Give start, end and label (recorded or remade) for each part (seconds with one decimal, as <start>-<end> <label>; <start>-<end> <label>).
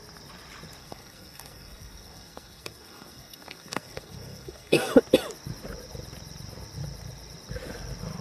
0.0-0.8 recorded; 0.8-4.9 remade; 4.9-8.2 recorded